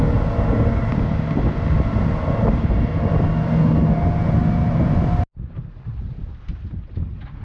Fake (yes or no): no